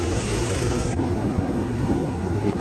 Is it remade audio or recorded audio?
remade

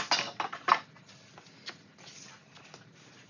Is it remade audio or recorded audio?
recorded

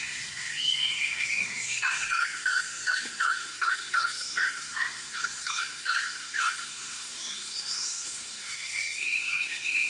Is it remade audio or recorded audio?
remade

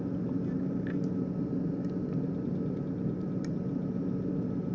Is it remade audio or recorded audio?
recorded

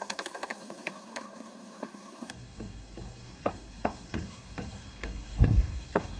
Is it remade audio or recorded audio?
remade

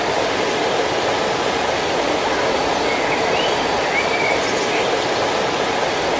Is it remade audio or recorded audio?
recorded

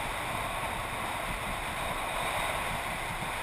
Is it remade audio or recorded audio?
recorded